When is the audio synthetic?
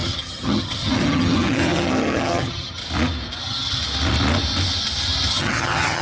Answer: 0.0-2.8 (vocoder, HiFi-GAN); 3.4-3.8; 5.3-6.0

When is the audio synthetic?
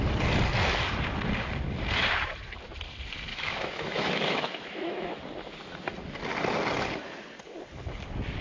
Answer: 3.3-5.2 (autoencoder, DAC-VAE)